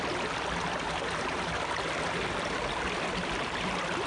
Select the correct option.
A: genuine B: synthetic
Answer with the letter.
A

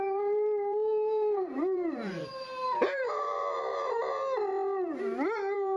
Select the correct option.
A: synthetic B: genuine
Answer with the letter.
A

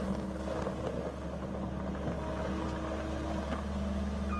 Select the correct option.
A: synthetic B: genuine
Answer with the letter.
B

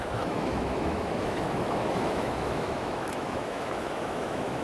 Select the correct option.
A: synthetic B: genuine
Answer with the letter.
A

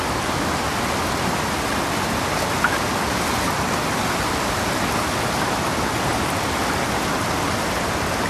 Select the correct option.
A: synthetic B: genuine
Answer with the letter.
B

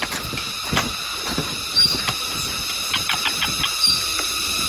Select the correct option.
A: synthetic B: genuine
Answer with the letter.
B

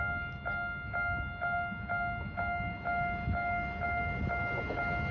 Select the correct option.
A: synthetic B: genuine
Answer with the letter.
B